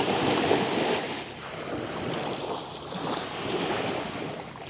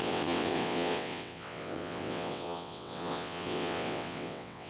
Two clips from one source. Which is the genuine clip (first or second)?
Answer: first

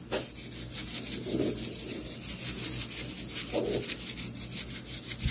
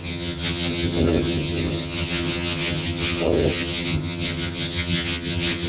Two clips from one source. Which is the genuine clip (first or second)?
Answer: first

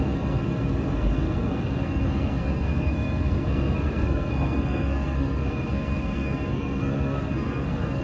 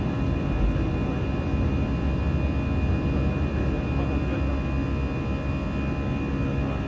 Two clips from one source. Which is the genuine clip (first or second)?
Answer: second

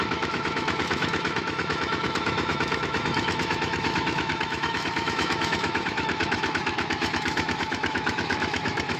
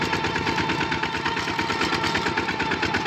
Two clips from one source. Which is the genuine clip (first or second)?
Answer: second